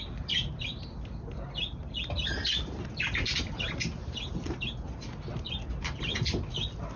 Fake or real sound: real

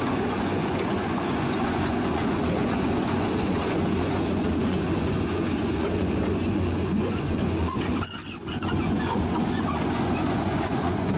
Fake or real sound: fake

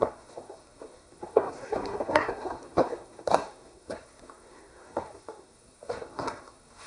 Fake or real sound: fake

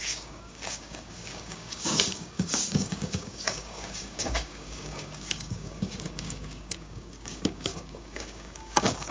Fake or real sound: fake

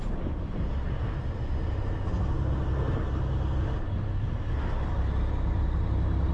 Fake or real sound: real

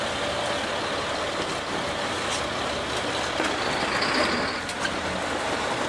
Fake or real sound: real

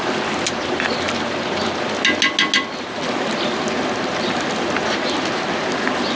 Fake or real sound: real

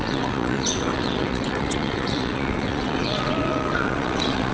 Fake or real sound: fake